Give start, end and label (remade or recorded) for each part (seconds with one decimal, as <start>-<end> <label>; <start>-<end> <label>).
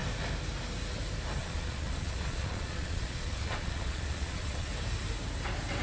0.0-1.4 recorded; 1.4-4.7 remade; 4.7-5.8 recorded